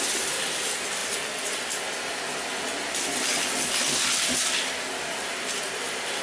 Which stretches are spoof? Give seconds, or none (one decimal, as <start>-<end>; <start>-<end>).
none